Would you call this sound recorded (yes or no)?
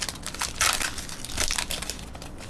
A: yes